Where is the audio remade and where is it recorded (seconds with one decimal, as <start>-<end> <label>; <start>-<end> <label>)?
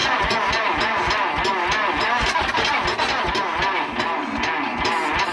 0.0-5.3 recorded